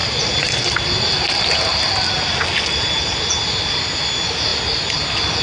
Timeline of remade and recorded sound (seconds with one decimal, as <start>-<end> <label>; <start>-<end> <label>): 0.0-3.2 remade; 3.2-5.4 recorded